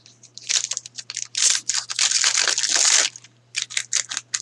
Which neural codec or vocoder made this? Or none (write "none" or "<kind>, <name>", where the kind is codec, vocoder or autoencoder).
none